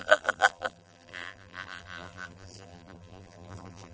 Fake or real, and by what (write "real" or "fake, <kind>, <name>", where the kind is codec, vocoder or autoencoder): fake, vocoder, BigVGAN v2